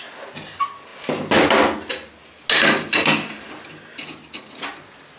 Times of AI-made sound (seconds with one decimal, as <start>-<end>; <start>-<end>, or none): none